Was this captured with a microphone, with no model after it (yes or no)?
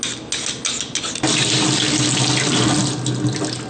yes